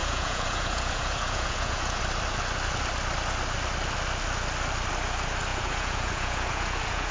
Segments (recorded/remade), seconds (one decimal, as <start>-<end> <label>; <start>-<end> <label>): 0.0-2.0 remade; 2.0-5.5 recorded; 5.5-7.1 remade